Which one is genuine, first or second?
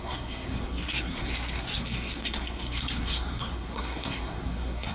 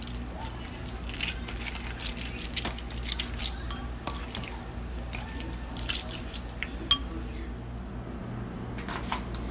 second